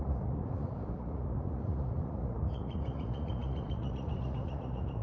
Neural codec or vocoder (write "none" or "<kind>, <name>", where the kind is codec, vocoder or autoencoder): vocoder, Vocos